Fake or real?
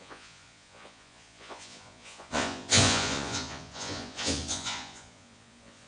fake